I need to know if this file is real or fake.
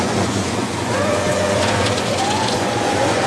fake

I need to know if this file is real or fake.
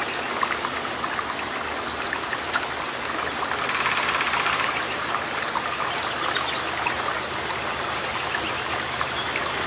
real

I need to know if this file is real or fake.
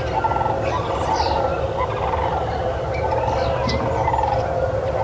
real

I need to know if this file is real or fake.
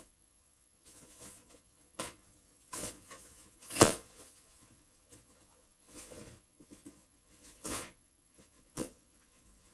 fake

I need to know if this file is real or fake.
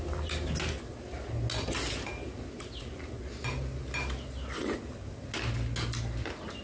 real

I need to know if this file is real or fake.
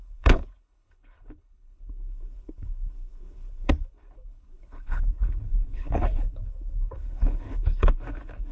fake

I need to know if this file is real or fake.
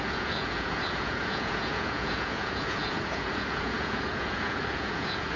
fake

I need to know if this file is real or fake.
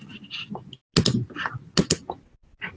real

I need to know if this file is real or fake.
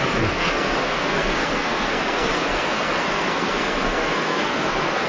fake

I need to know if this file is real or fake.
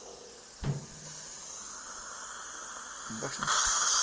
real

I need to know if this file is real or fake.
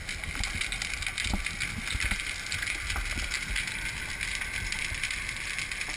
real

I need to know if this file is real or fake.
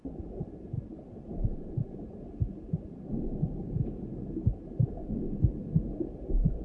real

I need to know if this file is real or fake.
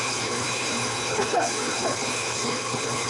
fake